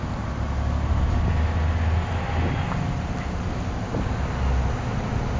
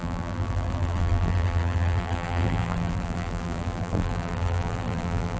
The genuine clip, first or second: first